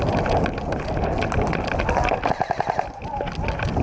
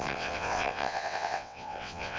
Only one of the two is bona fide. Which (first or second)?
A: first